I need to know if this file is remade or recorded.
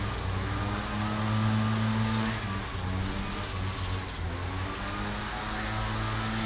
recorded